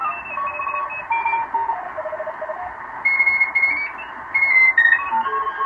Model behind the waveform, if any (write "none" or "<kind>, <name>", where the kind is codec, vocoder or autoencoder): none